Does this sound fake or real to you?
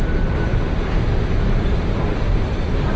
fake